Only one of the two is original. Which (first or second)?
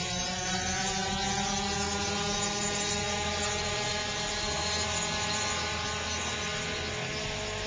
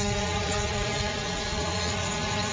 first